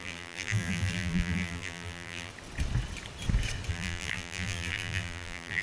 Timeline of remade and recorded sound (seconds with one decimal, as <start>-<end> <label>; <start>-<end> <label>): 0.0-2.3 remade; 2.3-3.7 recorded; 3.7-5.6 remade